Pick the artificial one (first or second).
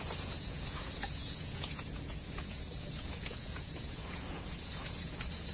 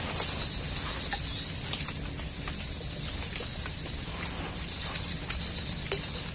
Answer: first